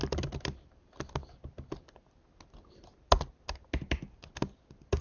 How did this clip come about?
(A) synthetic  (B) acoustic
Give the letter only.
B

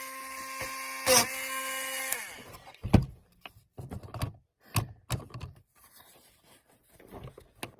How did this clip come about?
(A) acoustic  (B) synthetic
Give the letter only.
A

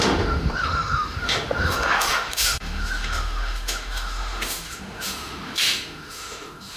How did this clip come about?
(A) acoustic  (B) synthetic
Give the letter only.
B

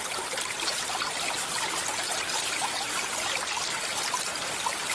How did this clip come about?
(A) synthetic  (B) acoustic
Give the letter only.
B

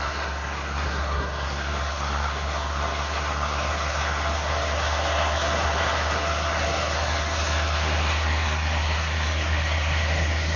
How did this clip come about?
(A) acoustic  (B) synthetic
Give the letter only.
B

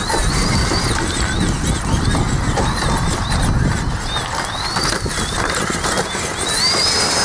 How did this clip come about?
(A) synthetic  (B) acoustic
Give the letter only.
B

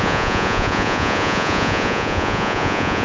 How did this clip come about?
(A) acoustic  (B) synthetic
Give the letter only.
B